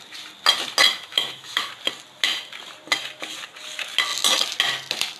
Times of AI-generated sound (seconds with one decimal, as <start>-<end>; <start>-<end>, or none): 0.9-1.7